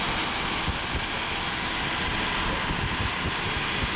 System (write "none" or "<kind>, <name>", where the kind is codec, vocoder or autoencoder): none